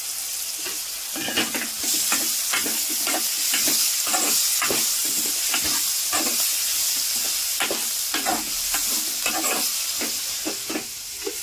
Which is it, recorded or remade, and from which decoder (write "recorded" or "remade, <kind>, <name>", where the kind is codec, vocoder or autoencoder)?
recorded